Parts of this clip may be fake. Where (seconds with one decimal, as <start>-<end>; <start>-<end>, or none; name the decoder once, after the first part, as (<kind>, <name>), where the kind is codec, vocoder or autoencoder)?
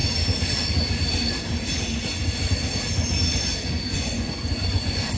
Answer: 3.9-5.2 (vocoder, Vocos)